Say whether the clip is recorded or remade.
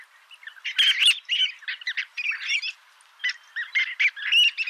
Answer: recorded